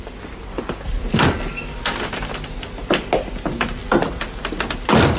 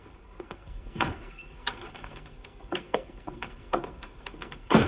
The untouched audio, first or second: first